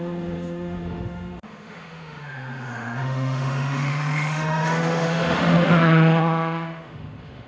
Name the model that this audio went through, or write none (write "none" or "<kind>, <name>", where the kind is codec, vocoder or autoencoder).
autoencoder, DAC-VAE